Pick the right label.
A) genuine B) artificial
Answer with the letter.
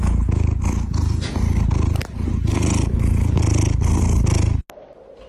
A